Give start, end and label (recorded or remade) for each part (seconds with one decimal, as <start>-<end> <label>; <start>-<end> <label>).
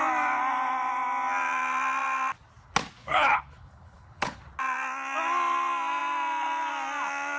0.0-3.0 recorded; 3.0-4.4 remade; 4.4-7.4 recorded